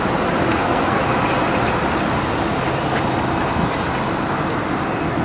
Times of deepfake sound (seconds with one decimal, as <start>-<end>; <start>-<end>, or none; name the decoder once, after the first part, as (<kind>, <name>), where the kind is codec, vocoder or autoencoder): 0.5-1.0 (codec, SNAC)